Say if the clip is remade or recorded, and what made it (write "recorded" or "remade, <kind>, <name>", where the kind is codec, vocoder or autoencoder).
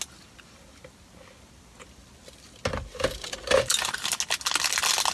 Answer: recorded